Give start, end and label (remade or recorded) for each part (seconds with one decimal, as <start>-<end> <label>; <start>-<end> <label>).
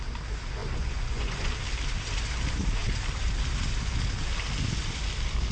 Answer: 0.0-0.6 recorded; 0.6-1.5 remade; 1.5-5.5 recorded